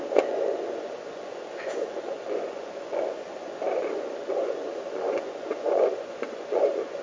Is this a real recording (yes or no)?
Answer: no